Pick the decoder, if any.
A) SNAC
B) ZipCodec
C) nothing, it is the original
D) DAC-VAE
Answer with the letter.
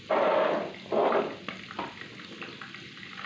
C